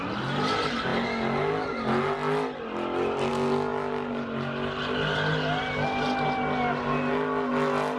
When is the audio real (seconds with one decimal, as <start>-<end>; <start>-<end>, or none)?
0.0-8.0